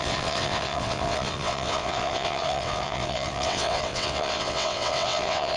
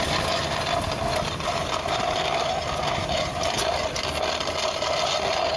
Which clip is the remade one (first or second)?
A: first